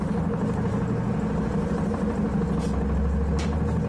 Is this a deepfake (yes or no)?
no